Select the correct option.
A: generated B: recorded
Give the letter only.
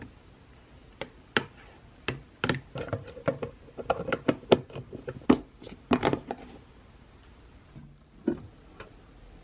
B